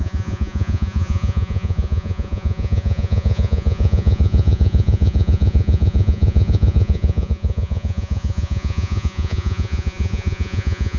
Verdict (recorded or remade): remade